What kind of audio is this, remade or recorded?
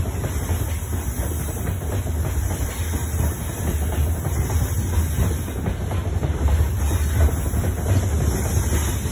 recorded